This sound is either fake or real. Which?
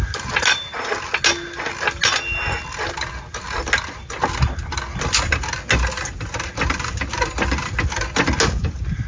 real